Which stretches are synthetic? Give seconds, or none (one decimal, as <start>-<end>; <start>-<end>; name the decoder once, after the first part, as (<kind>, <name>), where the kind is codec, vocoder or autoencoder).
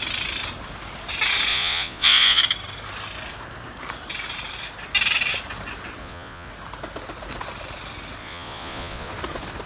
1.5-2.4 (vocoder, Vocos); 6.0-6.5; 8.2-9.1